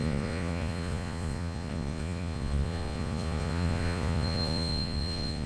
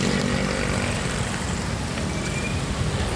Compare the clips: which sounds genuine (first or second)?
second